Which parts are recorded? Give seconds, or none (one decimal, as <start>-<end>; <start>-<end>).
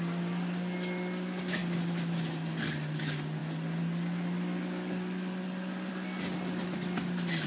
0.0-7.5